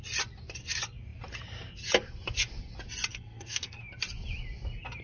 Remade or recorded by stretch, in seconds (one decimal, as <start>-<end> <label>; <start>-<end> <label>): 0.0-3.1 recorded; 3.1-3.8 remade; 3.8-5.0 recorded